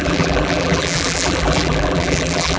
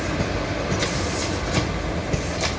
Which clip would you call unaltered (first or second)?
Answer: second